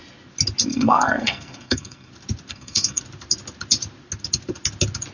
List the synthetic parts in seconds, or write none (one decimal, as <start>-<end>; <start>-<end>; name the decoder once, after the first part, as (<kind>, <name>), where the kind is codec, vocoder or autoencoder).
0.7-2.1 (codec, SNAC); 2.5-3.0